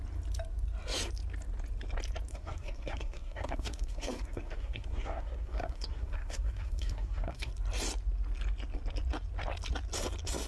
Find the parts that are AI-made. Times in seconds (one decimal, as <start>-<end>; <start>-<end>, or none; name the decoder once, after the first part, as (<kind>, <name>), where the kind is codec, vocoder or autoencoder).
2.3-7.5 (codec, SNAC)